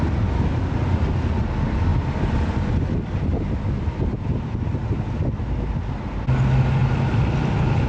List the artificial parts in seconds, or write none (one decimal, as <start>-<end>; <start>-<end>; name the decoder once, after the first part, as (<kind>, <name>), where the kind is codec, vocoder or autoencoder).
1.9-4.4 (vocoder, BigVGAN v2)